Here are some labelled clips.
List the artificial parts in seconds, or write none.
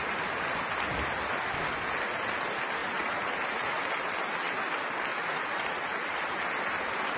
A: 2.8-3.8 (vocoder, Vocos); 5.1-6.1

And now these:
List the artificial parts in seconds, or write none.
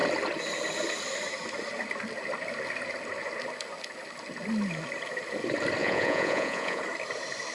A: 5.8-6.8 (vocoder, Vocos)